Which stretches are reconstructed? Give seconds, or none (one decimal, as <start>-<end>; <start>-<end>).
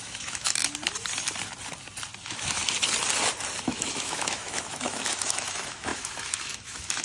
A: 0.0-0.6; 2.2-2.6; 3.6-7.0